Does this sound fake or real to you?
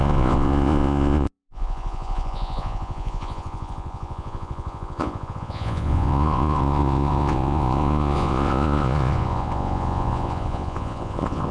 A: fake